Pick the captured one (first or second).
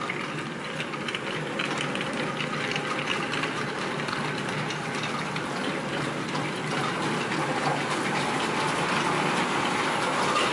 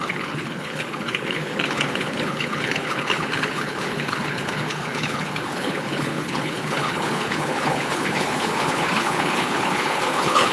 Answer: first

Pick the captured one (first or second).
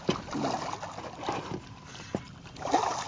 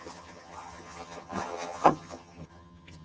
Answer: first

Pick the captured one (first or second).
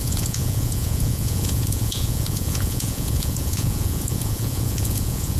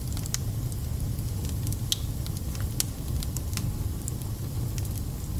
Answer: second